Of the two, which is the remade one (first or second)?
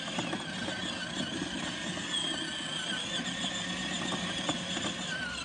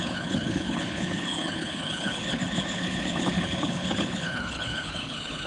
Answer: second